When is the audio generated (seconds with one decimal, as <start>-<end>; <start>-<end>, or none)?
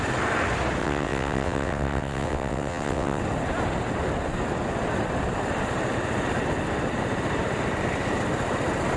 0.8-3.2